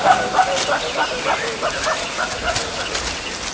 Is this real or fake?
real